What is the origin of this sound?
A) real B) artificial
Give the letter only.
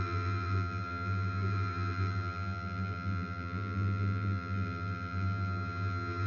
B